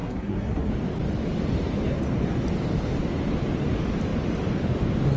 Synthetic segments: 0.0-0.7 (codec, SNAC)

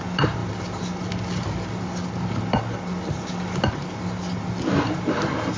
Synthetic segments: none

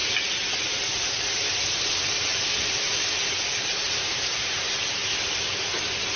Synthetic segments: 0.0-2.8 (vocoder, BigVGAN v2); 5.0-6.2

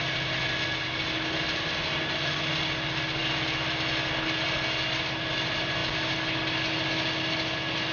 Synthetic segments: none